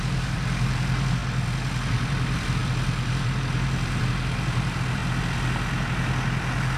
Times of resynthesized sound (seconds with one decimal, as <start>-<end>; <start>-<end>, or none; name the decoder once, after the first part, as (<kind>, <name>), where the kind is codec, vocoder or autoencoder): 0.0-1.2 (vocoder, BigVGAN v2); 1.9-5.0; 5.8-6.8